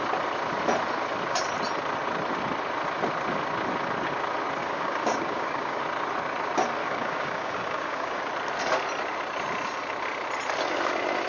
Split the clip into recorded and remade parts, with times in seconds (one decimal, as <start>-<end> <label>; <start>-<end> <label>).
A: 0.0-4.6 recorded; 4.6-5.8 remade; 5.8-6.8 recorded; 6.8-8.2 remade; 8.2-11.3 recorded